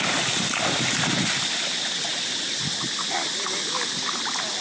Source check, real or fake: real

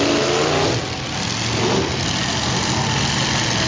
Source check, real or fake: real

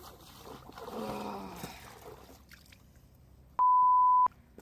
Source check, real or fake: real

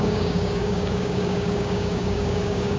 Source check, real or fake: fake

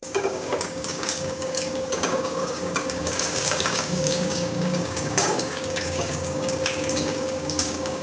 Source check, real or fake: fake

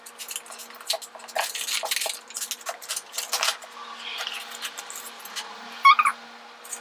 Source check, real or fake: real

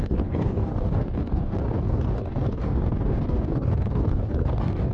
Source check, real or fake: fake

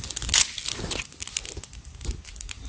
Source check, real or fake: real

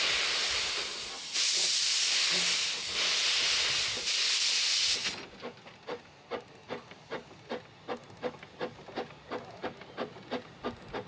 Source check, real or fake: real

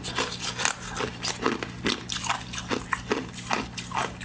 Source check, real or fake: real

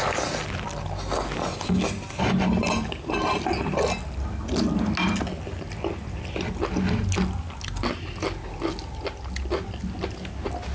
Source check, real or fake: real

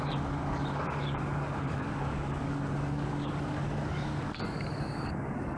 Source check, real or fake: fake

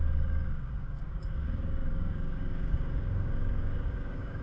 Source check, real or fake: fake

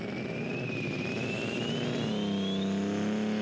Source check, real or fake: real